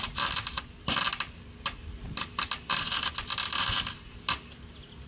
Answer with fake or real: real